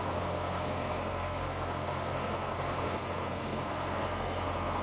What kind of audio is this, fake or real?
fake